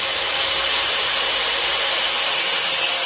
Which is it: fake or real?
real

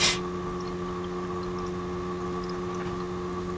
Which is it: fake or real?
real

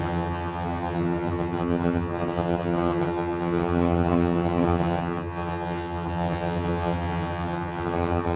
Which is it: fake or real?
fake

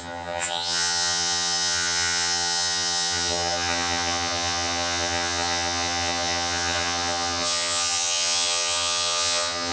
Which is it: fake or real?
fake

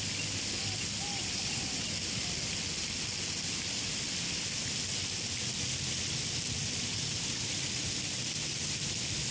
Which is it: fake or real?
real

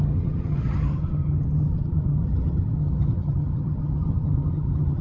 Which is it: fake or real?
fake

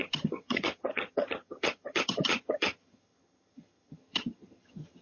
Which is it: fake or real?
fake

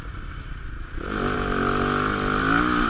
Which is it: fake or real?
real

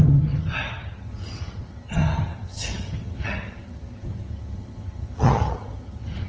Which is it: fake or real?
fake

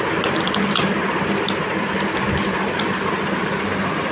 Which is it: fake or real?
real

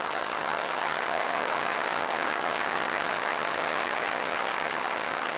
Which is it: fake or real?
fake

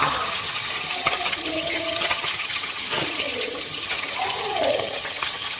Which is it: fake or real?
fake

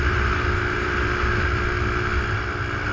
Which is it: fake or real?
real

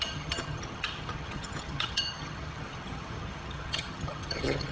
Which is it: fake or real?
fake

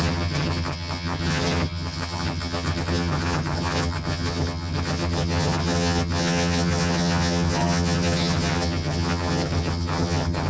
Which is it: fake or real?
fake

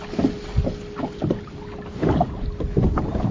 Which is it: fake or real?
real